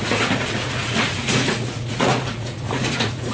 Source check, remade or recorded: remade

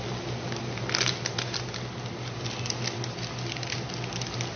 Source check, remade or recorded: recorded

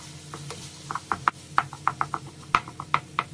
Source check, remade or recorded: recorded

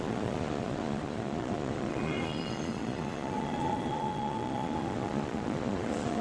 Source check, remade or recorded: remade